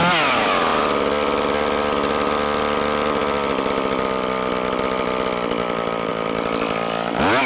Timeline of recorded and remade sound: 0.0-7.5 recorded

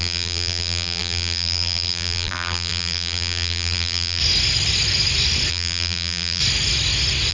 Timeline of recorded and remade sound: 0.0-4.2 remade; 4.2-5.5 recorded; 5.5-6.4 remade; 6.4-7.3 recorded

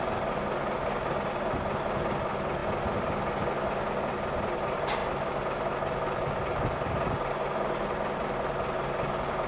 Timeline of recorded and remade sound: 0.0-9.5 recorded

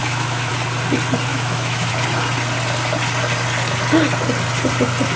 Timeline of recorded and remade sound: 0.0-0.5 remade; 0.5-1.3 recorded; 1.3-1.9 remade; 1.9-5.2 recorded

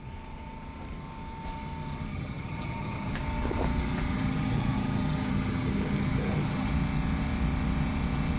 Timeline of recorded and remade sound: 0.0-2.1 recorded; 2.1-3.1 remade; 3.1-4.1 recorded; 4.1-6.7 remade; 6.7-8.4 recorded

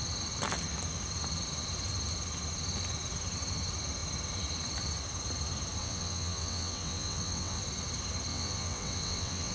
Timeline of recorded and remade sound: 0.0-5.8 recorded; 5.8-7.6 remade; 7.6-8.3 recorded; 8.3-9.5 remade

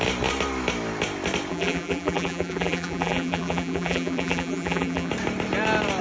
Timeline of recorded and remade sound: 0.0-1.5 recorded; 1.5-5.1 remade; 5.1-6.0 recorded

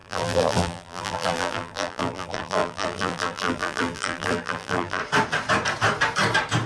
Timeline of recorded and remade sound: 0.0-5.0 remade; 5.0-6.7 recorded